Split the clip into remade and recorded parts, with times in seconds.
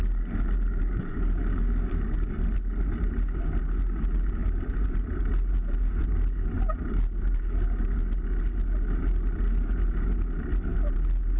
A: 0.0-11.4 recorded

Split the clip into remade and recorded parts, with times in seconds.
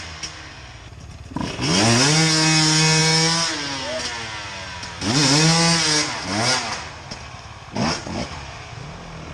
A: 0.0-9.3 recorded